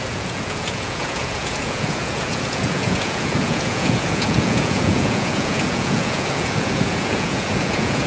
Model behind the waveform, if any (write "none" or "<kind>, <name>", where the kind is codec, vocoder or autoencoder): vocoder, Vocos